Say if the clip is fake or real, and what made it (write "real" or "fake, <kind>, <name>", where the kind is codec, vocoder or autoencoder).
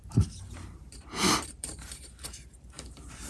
fake, vocoder, BigVGAN v2